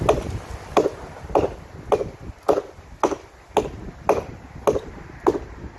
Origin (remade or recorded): recorded